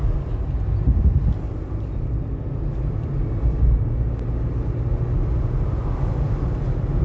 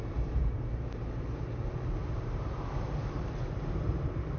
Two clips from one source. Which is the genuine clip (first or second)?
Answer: first